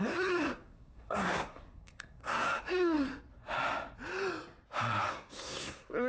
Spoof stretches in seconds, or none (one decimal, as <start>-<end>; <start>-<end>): 0.0-3.1; 5.1-6.1